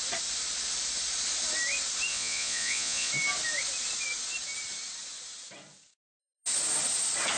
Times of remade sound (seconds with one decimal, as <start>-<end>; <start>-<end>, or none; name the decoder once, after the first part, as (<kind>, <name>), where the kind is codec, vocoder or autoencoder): 2.1-3.1 (vocoder, Vocos)